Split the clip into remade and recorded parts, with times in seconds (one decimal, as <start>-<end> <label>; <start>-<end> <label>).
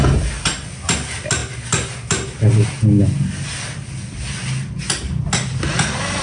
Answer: 0.0-6.2 recorded